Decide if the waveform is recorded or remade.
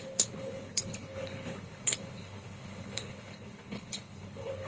remade